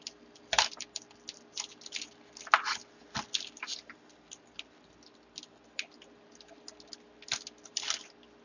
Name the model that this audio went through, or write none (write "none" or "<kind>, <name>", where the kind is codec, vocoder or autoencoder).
none